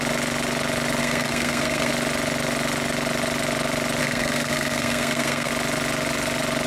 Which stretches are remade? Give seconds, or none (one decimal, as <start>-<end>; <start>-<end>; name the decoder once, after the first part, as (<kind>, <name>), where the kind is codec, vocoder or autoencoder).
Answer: 1.0-1.9 (codec, SNAC); 4.0-5.5